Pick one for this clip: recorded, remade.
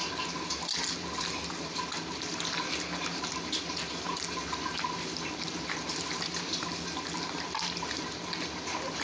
recorded